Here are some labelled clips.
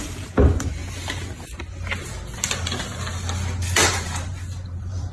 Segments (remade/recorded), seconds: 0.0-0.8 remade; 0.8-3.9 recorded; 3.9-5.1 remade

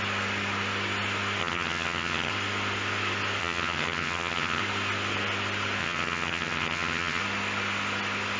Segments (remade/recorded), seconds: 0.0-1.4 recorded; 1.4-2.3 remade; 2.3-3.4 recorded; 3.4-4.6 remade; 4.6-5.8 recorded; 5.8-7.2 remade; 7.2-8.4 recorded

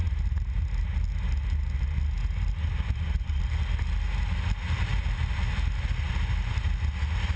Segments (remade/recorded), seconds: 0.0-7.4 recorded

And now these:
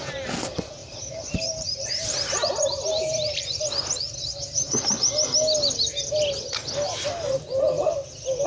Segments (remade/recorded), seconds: 0.0-0.8 recorded; 0.8-3.6 remade; 3.6-8.5 recorded

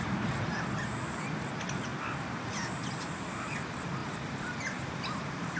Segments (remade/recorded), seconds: 0.0-4.0 recorded; 4.0-5.6 remade

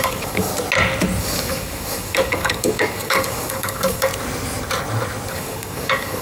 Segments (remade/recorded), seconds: 0.0-0.5 remade; 0.5-1.2 recorded; 1.2-4.1 remade; 4.1-5.3 recorded; 5.3-6.2 remade

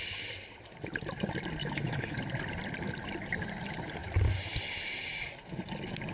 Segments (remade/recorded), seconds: 0.0-1.6 recorded; 1.6-2.2 remade; 2.2-6.1 recorded

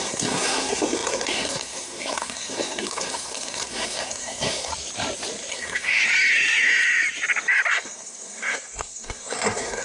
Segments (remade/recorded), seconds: 0.0-4.7 remade; 4.7-5.5 recorded; 5.5-6.0 remade; 6.0-7.7 recorded; 7.7-9.8 remade